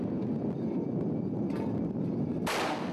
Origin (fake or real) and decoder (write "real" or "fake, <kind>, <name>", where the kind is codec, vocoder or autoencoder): real